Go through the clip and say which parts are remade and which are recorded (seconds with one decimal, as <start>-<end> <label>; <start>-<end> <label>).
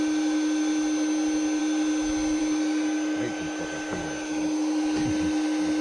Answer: 0.0-5.8 recorded